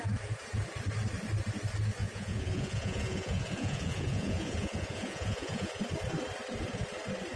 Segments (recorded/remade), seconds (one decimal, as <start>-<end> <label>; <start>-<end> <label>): 0.0-2.0 recorded; 2.0-5.8 remade; 5.8-7.4 recorded